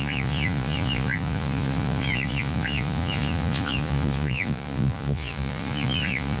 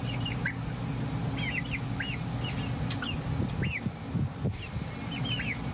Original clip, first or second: second